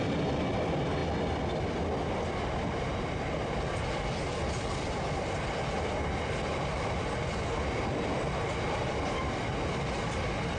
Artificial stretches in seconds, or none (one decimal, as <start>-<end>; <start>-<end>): none